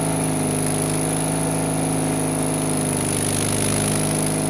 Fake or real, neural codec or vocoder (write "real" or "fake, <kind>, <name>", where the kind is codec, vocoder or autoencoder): real